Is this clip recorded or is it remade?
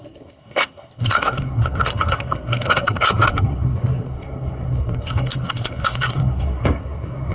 remade